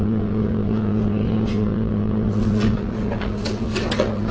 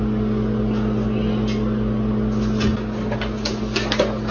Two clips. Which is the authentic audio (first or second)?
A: second